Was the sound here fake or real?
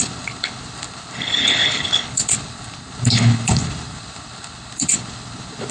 fake